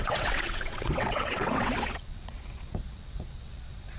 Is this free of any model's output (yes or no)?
no